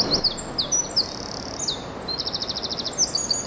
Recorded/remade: recorded